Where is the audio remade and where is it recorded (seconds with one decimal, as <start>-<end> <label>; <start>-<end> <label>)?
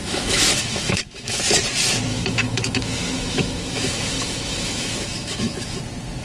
0.0-1.4 remade; 1.4-2.1 recorded; 2.1-5.8 remade; 5.8-6.2 recorded